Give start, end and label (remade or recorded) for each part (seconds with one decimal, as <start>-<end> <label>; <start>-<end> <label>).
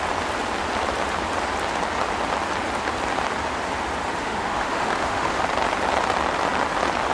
0.0-4.2 recorded; 4.2-5.4 remade; 5.4-7.1 recorded